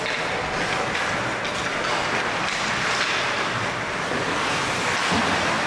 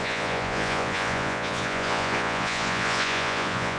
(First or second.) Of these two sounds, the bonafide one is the first